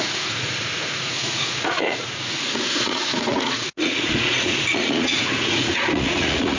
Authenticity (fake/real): fake